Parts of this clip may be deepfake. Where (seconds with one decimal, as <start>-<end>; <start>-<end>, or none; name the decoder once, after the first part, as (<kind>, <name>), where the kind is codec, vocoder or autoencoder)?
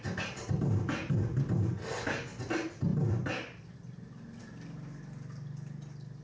none